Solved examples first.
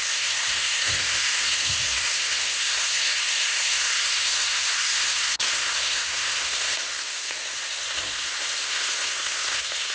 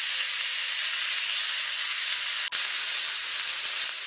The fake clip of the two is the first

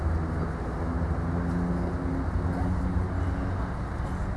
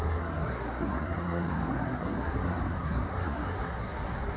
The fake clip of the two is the second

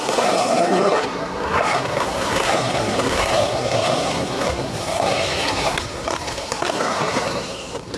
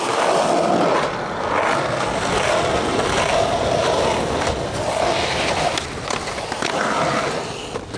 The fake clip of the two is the first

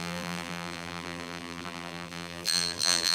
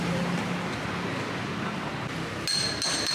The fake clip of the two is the first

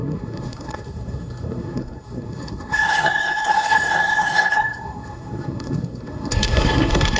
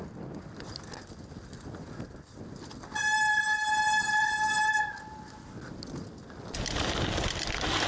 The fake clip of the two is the first